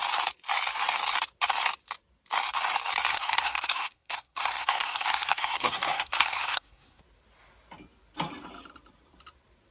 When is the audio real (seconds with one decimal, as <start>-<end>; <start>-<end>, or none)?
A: 0.0-3.1; 7.0-9.7